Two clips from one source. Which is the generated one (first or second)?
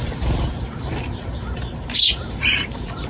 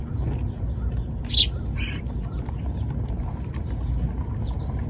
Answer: first